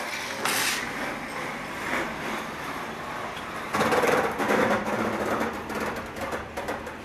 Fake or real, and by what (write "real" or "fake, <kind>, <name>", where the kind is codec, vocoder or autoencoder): real